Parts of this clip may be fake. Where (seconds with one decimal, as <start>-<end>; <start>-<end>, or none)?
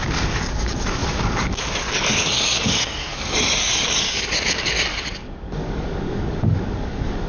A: 0.0-7.3